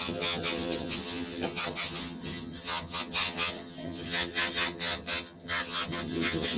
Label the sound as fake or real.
fake